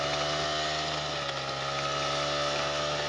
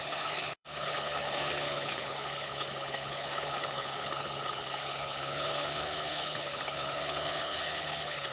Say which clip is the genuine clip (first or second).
first